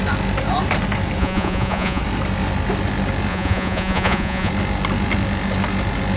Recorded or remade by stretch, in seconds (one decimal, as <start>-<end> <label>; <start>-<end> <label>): 0.0-1.2 recorded; 1.2-2.0 remade; 2.0-3.3 recorded; 3.3-4.5 remade; 4.5-6.2 recorded